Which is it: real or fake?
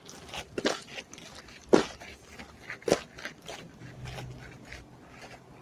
real